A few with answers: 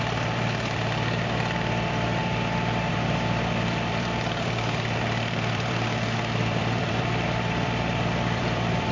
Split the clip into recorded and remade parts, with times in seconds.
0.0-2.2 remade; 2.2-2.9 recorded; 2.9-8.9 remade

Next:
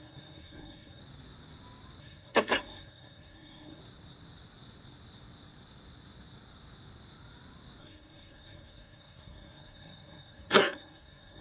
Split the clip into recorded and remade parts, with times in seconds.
0.0-1.0 remade; 1.0-2.0 recorded; 2.0-3.8 remade; 3.8-7.8 recorded; 7.8-11.4 remade

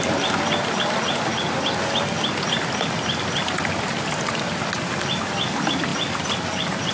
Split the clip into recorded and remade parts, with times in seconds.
0.0-6.9 recorded

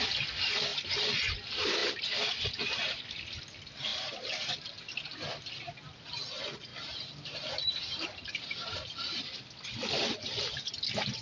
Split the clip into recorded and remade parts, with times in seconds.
0.0-1.8 recorded; 1.8-3.0 remade; 3.0-3.9 recorded; 3.9-5.7 remade; 5.7-6.7 recorded; 6.7-10.4 remade; 10.4-11.2 recorded

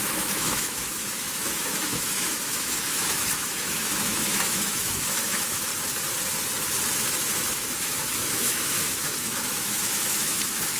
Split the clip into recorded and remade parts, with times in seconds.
0.0-5.7 remade; 5.7-6.9 recorded; 6.9-10.8 remade

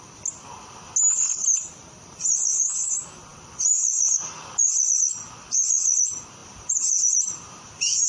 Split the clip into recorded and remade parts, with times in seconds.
0.0-6.4 recorded; 6.4-8.1 remade

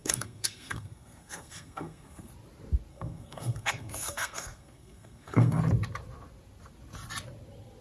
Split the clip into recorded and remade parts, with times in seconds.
0.0-2.3 remade; 2.3-2.9 recorded; 2.9-5.6 remade; 5.6-7.8 recorded

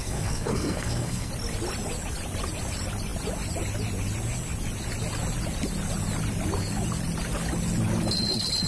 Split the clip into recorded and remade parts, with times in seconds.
0.0-1.3 remade; 1.3-8.7 recorded